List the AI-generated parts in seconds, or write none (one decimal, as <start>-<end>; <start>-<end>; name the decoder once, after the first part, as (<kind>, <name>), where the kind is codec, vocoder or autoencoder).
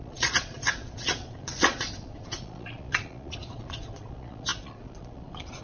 0.0-5.6 (vocoder, Vocos)